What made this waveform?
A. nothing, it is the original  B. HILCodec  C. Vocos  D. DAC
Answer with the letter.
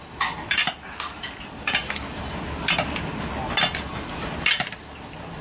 A